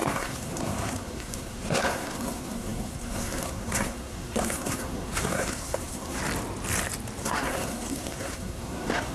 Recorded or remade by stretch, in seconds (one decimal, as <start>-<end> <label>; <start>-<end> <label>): 0.0-6.2 remade; 6.2-7.2 recorded; 7.2-9.1 remade